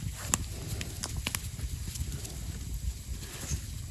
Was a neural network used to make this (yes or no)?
no